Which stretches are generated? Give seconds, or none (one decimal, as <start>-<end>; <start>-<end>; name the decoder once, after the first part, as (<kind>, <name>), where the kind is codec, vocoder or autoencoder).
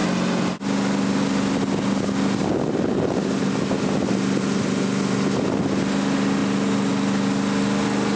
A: none